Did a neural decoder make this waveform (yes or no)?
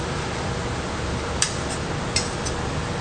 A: no